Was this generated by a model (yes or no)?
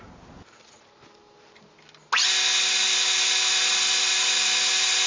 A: no